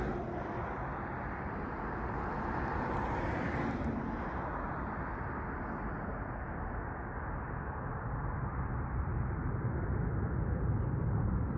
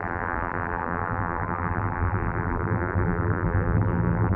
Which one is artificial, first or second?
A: second